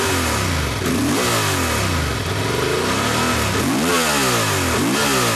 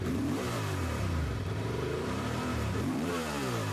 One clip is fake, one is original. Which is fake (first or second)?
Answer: second